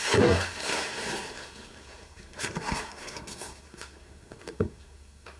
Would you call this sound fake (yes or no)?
yes